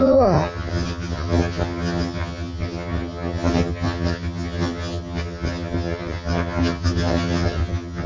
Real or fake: fake